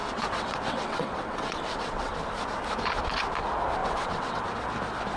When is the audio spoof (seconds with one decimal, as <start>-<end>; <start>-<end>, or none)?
0.0-2.1; 3.8-4.4